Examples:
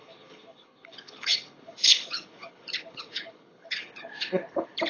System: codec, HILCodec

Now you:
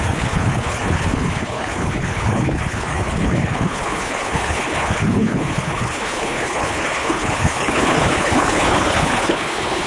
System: codec, HILCodec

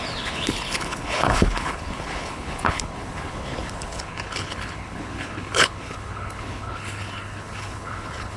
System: codec, HILCodec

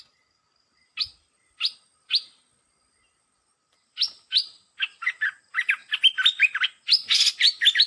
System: none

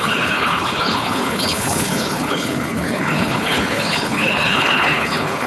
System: codec, HILCodec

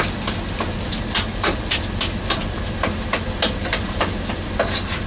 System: none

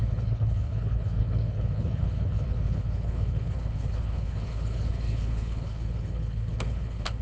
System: codec, HILCodec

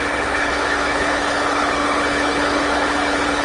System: codec, HILCodec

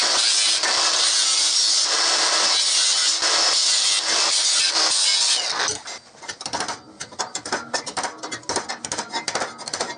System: none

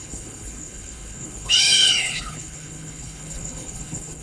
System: codec, HILCodec